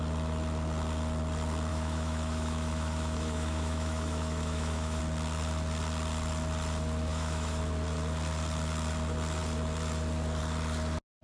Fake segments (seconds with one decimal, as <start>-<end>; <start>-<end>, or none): 1.7-5.0; 7.1-7.6